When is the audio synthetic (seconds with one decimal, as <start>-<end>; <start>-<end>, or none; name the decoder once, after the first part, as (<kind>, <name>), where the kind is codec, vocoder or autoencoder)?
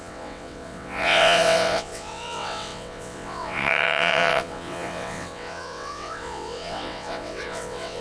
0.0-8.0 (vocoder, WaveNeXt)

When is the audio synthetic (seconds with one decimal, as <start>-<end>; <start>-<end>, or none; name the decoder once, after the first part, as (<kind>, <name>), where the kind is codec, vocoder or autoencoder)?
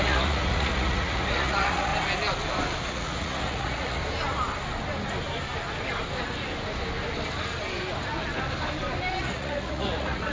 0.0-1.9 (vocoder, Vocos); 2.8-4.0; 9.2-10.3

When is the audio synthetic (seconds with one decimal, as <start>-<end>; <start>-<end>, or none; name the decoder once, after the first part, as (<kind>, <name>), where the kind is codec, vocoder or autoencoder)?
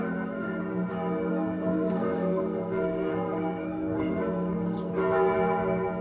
0.0-0.6 (codec, SNAC); 1.3-4.9